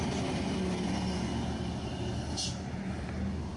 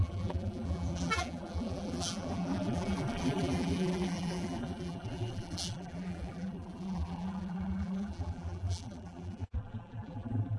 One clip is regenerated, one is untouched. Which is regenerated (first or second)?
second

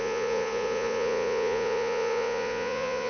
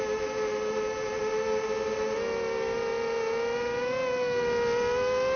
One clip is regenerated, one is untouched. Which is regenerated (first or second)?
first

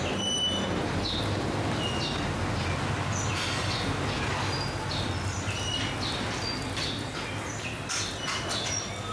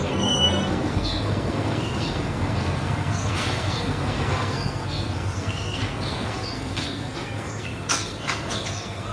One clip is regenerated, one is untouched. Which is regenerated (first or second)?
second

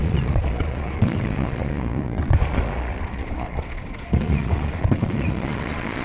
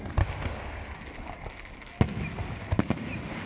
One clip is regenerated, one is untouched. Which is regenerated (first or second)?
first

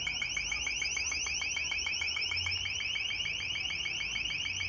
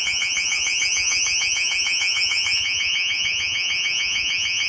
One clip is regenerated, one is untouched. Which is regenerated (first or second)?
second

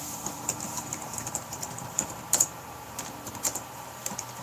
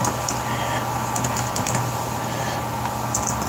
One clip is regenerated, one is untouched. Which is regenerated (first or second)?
first